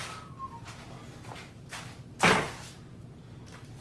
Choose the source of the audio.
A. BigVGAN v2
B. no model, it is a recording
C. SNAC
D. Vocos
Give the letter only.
B